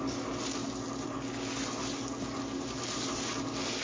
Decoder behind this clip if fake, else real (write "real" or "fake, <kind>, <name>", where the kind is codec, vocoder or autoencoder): real